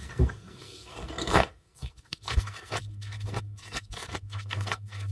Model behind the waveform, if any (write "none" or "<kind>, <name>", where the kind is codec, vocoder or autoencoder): codec, SNAC